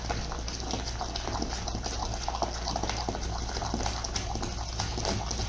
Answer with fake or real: real